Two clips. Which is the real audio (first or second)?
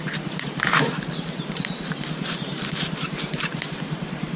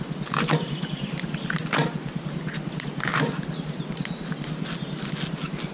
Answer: second